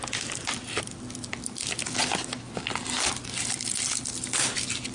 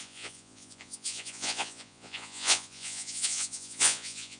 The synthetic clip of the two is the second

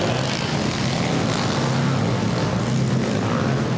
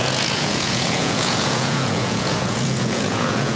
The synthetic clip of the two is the second